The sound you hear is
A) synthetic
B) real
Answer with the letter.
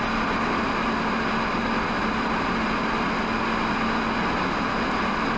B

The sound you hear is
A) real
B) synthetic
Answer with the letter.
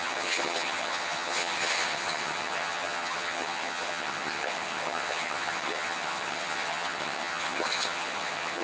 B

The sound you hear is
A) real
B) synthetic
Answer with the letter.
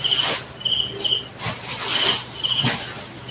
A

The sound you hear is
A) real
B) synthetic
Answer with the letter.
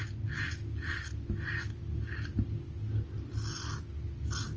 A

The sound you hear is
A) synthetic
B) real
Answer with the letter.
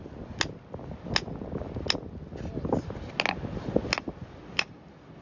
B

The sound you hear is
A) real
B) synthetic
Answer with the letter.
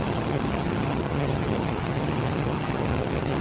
B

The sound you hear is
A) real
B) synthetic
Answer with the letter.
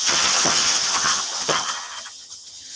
B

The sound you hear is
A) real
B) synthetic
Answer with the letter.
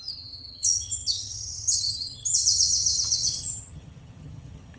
B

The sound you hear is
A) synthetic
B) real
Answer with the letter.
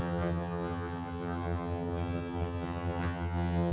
A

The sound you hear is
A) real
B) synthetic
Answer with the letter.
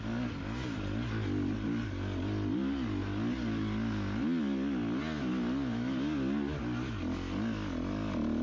A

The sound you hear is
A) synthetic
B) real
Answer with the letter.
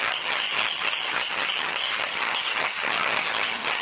A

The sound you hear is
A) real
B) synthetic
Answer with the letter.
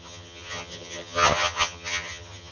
B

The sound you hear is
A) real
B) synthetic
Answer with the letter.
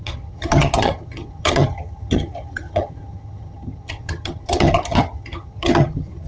B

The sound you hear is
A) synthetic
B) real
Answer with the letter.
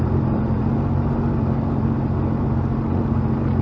B